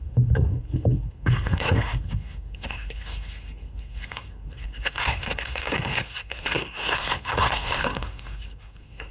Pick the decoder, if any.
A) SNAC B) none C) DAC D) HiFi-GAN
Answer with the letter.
A